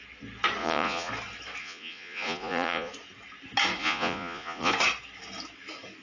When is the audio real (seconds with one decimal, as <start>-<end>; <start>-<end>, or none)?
0.0-0.6; 1.1-1.6; 2.9-3.8; 4.7-6.0